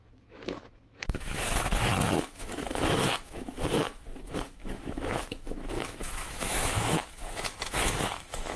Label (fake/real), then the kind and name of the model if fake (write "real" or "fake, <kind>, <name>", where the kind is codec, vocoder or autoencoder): fake, autoencoder, DAC-VAE